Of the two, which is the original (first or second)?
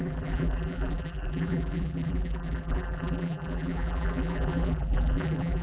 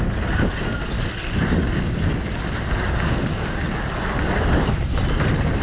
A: second